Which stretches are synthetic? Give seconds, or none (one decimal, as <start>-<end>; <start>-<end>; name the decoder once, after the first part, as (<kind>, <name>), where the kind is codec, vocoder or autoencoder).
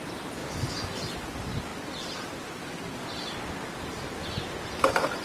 none